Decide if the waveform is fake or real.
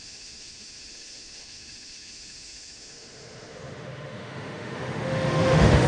fake